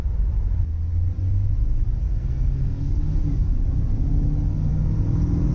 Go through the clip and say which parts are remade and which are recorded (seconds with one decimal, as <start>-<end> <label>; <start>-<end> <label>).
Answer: 0.0-2.0 recorded; 2.0-3.0 remade; 3.0-5.5 recorded